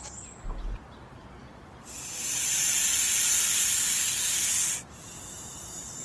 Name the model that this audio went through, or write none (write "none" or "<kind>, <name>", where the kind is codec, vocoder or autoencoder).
none